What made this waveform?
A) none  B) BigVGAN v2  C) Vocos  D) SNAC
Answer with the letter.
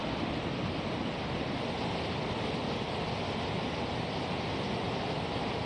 A